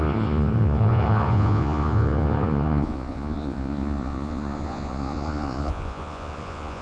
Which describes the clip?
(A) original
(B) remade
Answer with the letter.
B